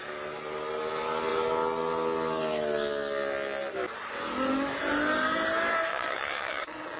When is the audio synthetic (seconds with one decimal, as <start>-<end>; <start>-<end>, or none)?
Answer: 5.9-7.0

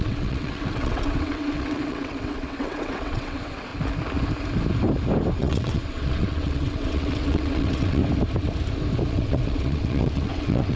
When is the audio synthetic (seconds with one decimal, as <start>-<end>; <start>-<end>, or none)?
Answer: 0.0-3.7; 5.4-8.0; 9.1-10.8

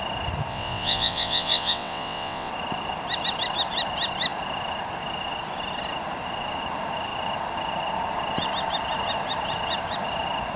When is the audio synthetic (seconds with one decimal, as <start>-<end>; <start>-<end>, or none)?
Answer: 0.5-2.5